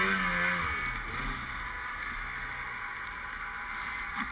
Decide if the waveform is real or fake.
real